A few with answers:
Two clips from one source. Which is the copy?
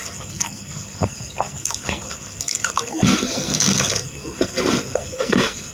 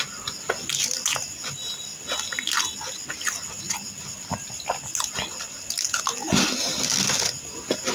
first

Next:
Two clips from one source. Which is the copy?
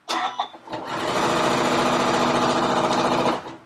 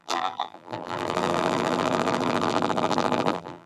second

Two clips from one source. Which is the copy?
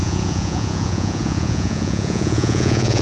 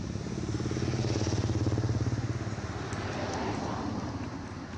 first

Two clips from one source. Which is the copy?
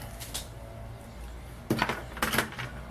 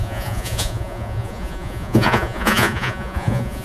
second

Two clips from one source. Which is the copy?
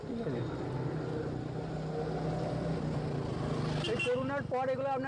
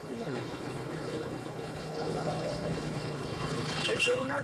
second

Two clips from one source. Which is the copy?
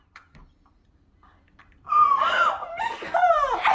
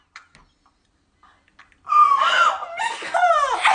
first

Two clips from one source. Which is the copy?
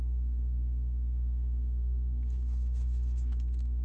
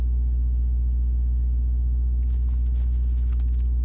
first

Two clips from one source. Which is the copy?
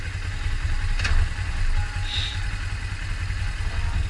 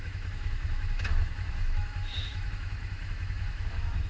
second